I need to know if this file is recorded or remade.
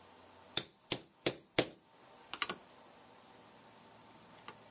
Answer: recorded